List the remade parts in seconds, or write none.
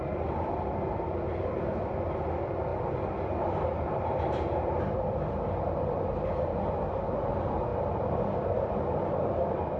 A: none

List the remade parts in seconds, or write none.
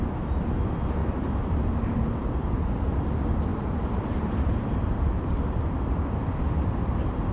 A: 1.0-1.6 (vocoder, BigVGAN v2); 3.5-5.0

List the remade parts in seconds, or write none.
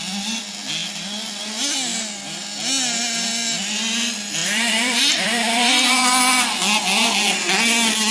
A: 4.4-6.2 (vocoder, BigVGAN v2)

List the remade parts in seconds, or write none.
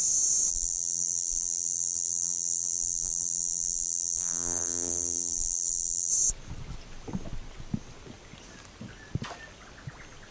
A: 0.5-6.1 (vocoder, BigVGAN v2)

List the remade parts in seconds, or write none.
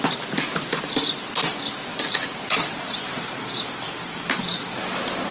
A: 1.9-5.3 (vocoder, BigVGAN v2)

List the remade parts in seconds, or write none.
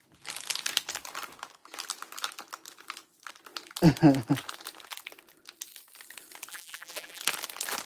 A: 6.5-7.2 (vocoder, BigVGAN v2)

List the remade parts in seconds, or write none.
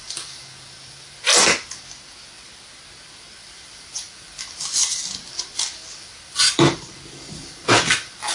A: 0.0-1.3 (vocoder, BigVGAN v2); 3.4-8.3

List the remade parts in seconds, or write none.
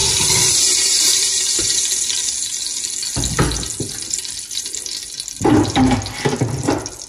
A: 0.0-2.3 (vocoder, BigVGAN v2)